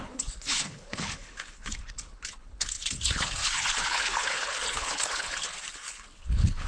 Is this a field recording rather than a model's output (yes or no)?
no